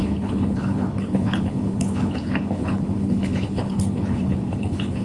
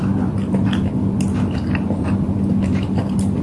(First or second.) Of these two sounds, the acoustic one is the second